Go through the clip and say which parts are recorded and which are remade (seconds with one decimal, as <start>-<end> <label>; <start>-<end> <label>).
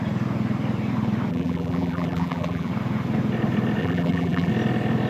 0.0-1.3 recorded; 1.3-2.7 remade; 2.7-3.8 recorded; 3.8-4.5 remade; 4.5-5.1 recorded